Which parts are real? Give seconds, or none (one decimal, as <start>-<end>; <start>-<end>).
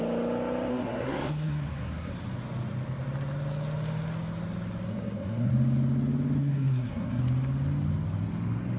0.0-0.7; 2.1-4.9; 5.5-6.4; 7.2-8.8